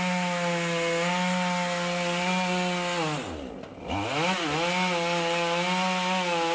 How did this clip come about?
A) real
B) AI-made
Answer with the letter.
A